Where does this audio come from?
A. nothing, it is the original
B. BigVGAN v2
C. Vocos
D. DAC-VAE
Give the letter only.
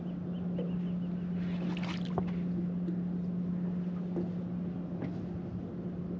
A